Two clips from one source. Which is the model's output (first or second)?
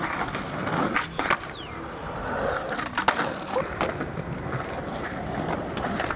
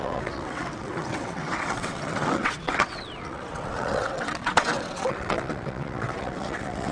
second